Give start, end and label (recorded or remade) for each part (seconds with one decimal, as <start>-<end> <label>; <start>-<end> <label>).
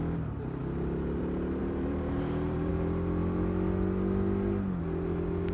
0.0-1.6 recorded; 1.6-2.7 remade; 2.7-5.5 recorded